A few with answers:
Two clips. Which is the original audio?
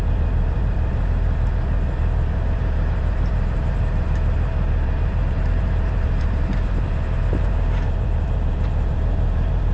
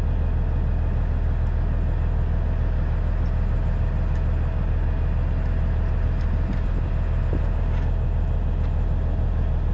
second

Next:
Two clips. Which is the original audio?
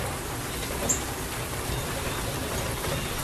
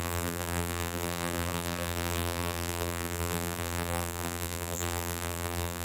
first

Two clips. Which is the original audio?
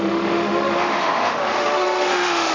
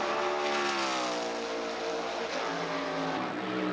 second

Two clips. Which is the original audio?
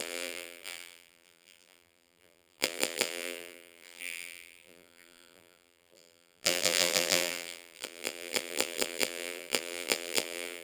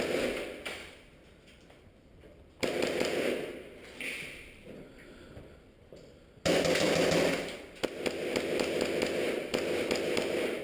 second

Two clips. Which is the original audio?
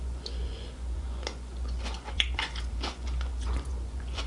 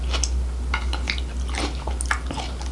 second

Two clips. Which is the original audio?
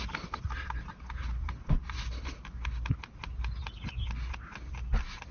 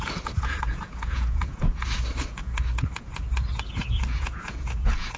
first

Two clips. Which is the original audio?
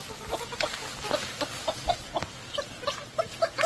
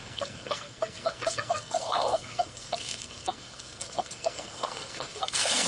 first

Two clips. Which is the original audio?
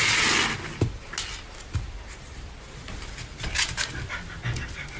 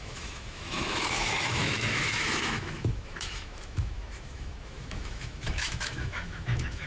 first